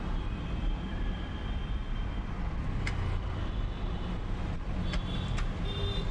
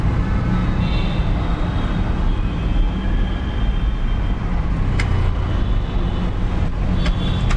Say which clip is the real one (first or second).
second